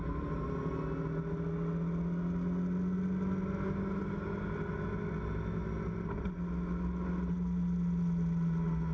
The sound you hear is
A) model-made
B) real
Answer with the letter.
B